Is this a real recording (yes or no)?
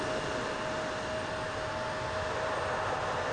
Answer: yes